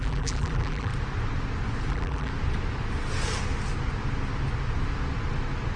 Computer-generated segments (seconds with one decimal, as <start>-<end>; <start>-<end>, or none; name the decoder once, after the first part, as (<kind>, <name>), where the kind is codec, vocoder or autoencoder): 0.0-0.9 (vocoder, BigVGAN v2); 1.9-2.3